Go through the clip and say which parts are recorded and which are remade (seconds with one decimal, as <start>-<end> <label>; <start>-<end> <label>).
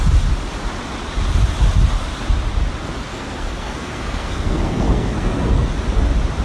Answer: 0.0-3.1 recorded; 3.1-5.7 remade; 5.7-6.4 recorded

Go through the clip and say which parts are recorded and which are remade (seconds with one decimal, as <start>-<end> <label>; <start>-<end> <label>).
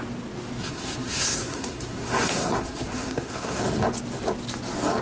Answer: 0.0-0.6 recorded; 0.6-3.6 remade; 3.6-5.0 recorded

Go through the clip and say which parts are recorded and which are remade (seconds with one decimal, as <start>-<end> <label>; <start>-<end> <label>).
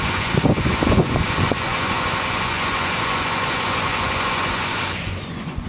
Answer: 0.0-5.7 remade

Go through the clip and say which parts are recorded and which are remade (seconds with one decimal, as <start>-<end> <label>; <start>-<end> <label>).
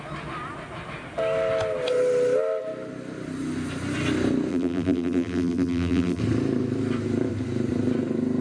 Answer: 0.0-4.5 recorded; 4.5-6.2 remade; 6.2-8.4 recorded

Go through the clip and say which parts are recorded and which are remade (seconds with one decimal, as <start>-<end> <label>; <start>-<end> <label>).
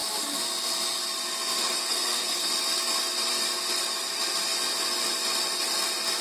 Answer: 0.0-1.6 recorded; 1.6-2.5 remade; 2.5-6.2 recorded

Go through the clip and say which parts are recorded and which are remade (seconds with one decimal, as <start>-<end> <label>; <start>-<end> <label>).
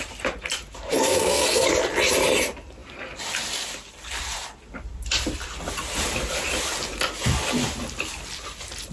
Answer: 0.0-0.9 recorded; 0.9-1.7 remade; 1.7-8.9 recorded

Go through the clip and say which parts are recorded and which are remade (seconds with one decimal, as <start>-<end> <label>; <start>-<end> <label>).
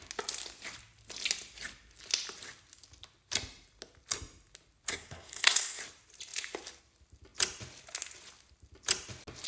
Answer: 0.0-4.9 recorded; 4.9-5.8 remade; 5.8-9.5 recorded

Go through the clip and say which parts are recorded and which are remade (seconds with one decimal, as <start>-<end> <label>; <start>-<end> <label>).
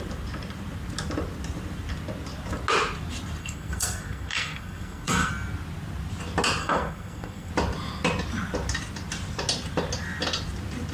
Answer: 0.0-3.4 recorded; 3.4-5.3 remade; 5.3-6.6 recorded; 6.6-7.5 remade; 7.5-10.9 recorded